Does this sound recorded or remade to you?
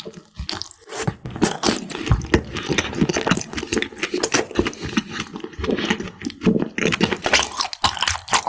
recorded